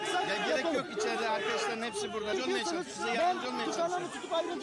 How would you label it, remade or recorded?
recorded